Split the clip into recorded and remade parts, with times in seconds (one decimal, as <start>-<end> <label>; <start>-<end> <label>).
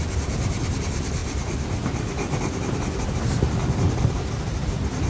0.0-5.1 recorded